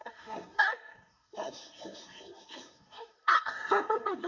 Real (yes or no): no